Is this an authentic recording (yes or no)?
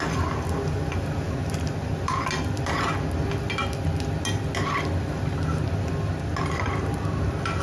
yes